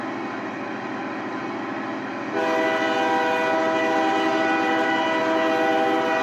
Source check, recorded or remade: recorded